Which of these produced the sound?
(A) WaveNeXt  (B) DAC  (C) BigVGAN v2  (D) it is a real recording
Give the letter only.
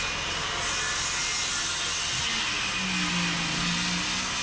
D